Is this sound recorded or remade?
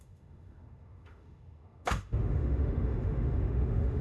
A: remade